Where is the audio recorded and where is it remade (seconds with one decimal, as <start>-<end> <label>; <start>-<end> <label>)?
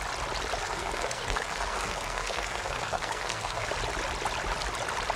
0.0-0.6 recorded; 0.6-3.7 remade; 3.7-5.2 recorded